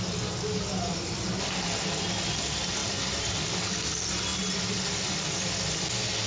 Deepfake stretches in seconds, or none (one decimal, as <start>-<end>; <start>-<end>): 2.8-3.9